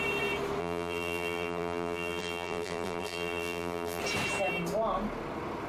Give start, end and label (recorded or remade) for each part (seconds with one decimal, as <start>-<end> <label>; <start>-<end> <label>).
0.0-0.6 recorded; 0.6-4.0 remade; 4.0-5.7 recorded